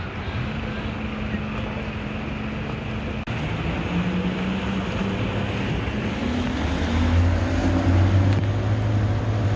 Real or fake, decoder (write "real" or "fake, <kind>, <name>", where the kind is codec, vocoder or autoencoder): real